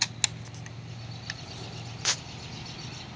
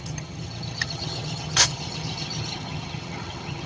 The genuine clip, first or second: first